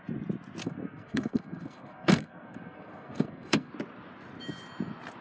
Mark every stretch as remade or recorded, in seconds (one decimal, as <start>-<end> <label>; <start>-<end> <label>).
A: 0.0-0.6 recorded; 0.6-3.7 remade; 3.7-5.2 recorded